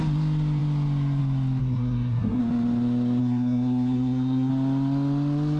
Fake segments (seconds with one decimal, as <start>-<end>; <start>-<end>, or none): 1.6-2.4; 3.2-4.5